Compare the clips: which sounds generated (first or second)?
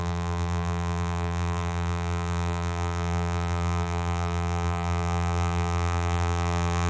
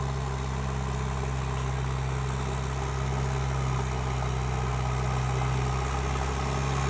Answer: first